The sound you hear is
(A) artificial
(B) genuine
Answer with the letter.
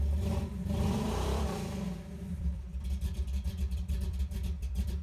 A